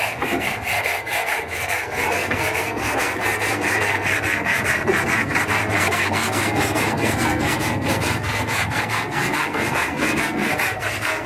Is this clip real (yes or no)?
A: no